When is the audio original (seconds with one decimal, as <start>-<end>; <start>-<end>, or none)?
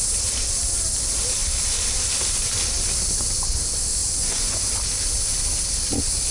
0.0-4.0; 4.7-6.3